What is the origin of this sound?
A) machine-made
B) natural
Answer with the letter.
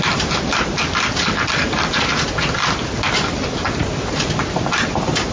B